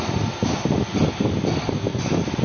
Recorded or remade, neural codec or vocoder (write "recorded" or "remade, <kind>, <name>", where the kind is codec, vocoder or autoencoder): recorded